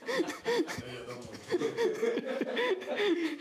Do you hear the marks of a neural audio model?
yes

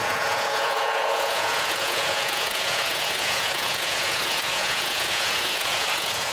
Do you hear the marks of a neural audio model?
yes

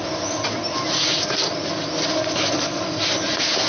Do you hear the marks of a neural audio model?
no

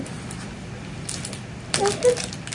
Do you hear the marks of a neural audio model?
no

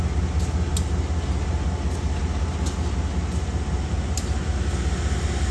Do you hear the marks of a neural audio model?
no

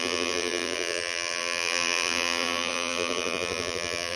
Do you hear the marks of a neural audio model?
yes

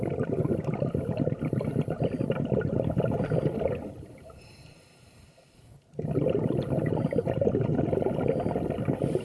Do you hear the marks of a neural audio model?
no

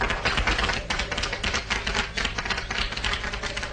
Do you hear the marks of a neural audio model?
no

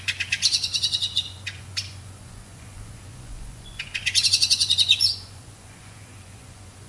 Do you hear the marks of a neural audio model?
yes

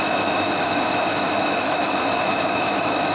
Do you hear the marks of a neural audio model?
yes